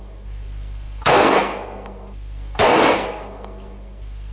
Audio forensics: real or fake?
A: fake